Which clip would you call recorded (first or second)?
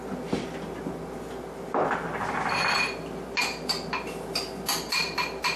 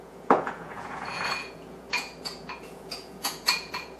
first